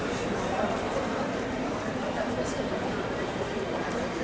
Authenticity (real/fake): fake